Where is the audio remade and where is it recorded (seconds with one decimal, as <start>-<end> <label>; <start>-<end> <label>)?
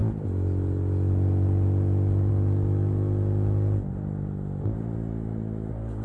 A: 0.0-6.0 recorded